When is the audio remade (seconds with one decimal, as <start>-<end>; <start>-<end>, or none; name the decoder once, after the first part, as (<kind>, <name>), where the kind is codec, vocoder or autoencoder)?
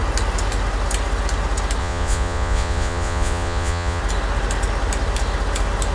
1.8-4.0 (vocoder, Vocos)